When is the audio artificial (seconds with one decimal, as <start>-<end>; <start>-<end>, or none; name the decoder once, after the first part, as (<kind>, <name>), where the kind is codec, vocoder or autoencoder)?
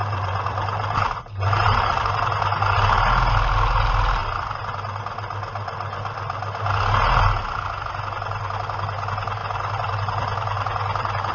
0.0-2.2 (vocoder, BigVGAN v2)